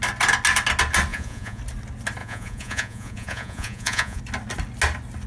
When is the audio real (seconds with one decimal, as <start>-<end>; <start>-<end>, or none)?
0.0-1.1; 1.6-2.2; 4.2-5.3